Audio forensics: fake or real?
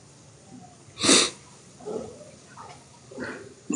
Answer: real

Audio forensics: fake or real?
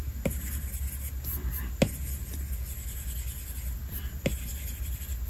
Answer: real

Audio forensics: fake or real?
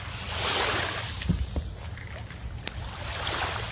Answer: real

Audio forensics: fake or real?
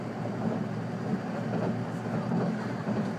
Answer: real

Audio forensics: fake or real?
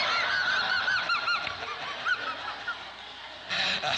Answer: real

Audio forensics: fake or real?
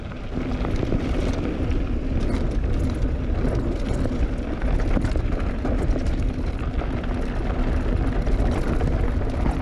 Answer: real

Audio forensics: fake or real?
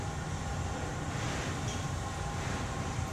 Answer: real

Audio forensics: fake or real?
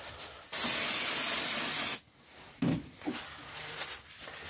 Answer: real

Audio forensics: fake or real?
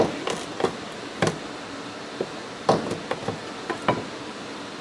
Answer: real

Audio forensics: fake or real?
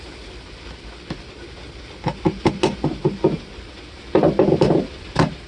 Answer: real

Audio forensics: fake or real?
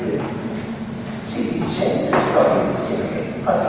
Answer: real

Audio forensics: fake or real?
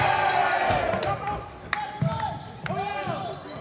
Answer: real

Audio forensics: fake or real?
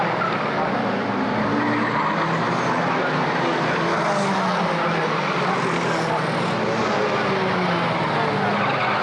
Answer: real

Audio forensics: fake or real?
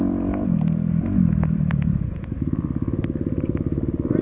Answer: fake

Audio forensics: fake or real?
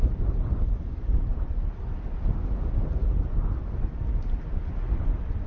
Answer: real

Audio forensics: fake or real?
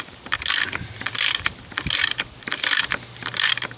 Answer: fake